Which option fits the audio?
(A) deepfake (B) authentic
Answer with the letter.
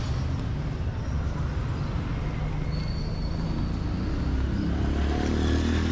B